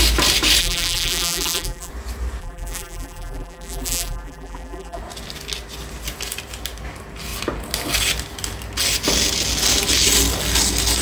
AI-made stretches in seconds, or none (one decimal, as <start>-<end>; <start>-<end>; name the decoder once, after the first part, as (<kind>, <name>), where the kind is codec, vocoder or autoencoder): 0.6-1.9 (vocoder, BigVGAN v2); 2.4-5.0